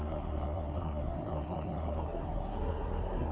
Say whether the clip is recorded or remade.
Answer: remade